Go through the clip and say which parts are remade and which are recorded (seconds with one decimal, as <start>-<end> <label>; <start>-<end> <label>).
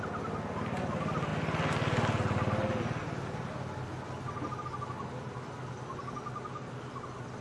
0.0-7.4 recorded